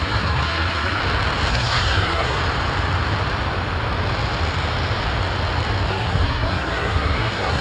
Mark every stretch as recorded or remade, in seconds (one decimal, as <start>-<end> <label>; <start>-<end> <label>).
0.0-1.0 remade; 1.0-1.5 recorded; 1.5-2.4 remade; 2.4-5.9 recorded; 5.9-7.6 remade